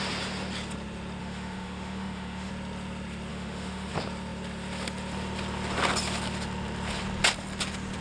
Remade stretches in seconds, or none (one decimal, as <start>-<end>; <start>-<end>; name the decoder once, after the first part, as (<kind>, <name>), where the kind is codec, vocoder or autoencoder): 1.2-2.5 (autoencoder, DAC-VAE); 3.3-3.9